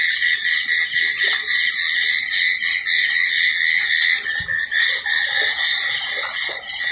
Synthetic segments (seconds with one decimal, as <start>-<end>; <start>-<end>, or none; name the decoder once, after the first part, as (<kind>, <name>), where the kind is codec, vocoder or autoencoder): none